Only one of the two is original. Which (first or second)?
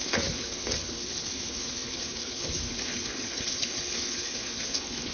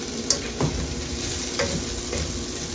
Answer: second